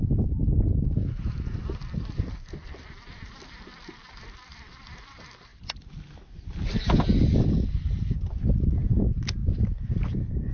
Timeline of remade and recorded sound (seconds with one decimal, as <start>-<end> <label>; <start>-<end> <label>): 0.0-10.5 recorded